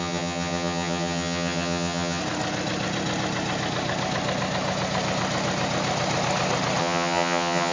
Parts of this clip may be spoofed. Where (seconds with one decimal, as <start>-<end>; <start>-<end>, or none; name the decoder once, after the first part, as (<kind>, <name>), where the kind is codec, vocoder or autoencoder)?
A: 0.0-2.2 (vocoder, HiFi-GAN); 6.8-7.7